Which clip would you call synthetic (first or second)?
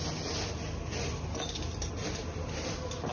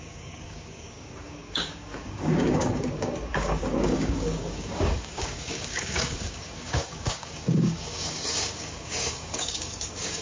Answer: second